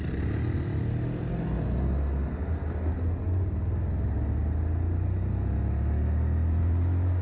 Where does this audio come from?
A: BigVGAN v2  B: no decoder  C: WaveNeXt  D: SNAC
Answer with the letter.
B